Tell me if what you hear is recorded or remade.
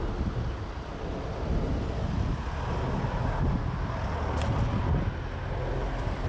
recorded